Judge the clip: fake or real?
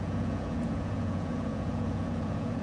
fake